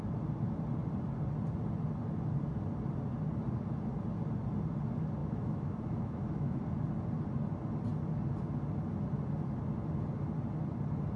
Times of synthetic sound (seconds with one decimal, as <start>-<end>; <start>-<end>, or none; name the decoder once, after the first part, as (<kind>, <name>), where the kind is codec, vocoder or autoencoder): 5.2-6.6 (autoencoder, DAC-VAE)